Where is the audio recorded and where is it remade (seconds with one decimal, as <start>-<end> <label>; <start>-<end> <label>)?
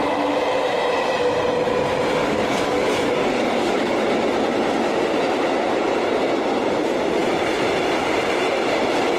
0.0-2.2 recorded; 2.2-4.0 remade; 4.0-9.2 recorded